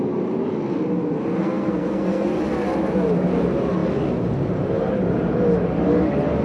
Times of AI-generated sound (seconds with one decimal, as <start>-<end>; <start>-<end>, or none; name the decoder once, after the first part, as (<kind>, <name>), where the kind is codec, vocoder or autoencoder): 1.4-2.3 (codec, SNAC)